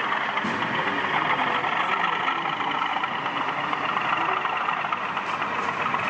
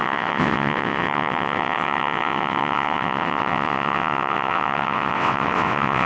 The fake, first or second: second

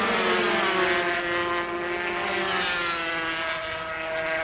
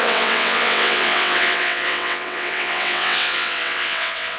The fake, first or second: second